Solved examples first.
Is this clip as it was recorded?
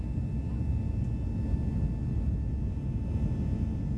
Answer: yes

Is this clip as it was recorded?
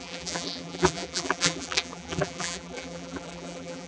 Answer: no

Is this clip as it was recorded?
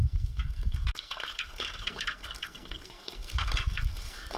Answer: no